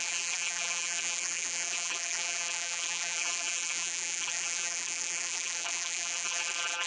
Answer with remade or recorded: remade